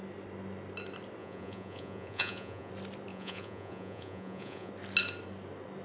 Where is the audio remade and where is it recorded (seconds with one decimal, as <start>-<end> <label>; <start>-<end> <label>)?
0.0-1.2 recorded; 1.2-2.7 remade; 2.7-3.1 recorded; 3.1-4.7 remade; 4.7-5.8 recorded